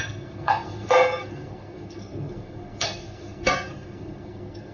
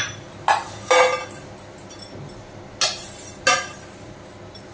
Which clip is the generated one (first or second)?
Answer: first